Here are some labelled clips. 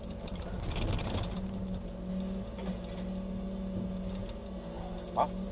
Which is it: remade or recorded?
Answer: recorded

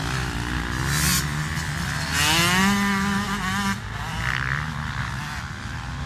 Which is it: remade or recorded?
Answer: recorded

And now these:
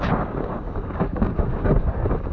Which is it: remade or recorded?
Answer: remade